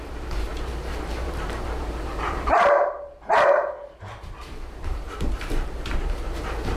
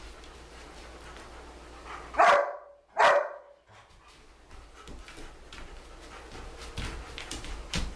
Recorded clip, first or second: second